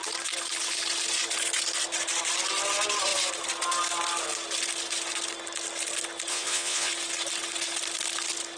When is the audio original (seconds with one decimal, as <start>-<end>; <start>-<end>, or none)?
0.0-6.3; 6.9-8.6